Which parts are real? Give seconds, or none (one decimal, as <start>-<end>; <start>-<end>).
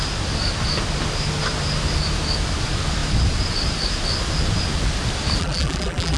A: 0.0-5.4